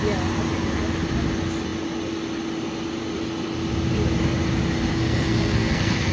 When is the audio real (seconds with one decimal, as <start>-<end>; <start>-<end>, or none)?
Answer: 0.0-4.9